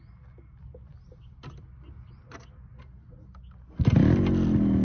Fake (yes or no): no